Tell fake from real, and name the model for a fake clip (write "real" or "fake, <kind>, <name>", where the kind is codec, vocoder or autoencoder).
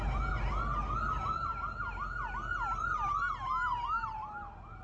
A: real